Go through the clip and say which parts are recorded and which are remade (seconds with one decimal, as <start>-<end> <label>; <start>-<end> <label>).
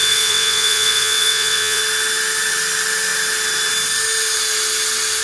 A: 0.0-1.8 remade; 1.8-5.2 recorded